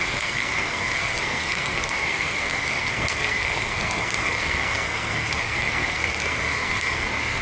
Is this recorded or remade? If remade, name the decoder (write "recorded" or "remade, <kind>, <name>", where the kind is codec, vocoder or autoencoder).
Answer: remade, codec, SNAC